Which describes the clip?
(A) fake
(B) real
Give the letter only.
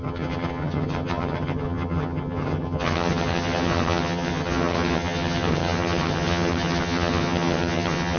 A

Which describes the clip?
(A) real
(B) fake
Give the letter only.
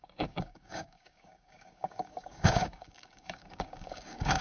B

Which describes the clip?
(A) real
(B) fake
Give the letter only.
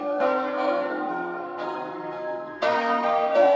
B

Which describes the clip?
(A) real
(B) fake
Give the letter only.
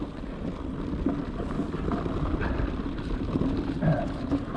A